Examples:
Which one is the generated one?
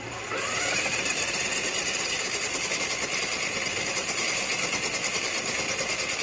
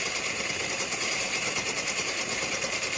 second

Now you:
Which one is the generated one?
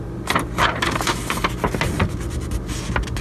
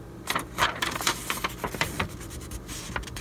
second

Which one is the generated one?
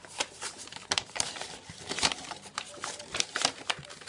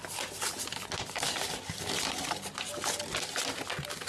first